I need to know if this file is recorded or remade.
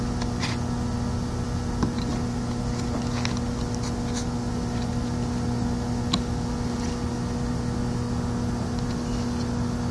recorded